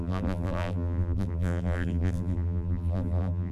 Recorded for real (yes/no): no